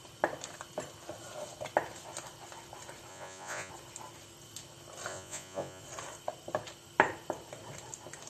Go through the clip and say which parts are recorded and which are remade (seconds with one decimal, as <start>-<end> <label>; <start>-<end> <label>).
0.0-3.1 recorded; 3.1-3.7 remade; 3.7-5.1 recorded; 5.1-5.8 remade; 5.8-8.3 recorded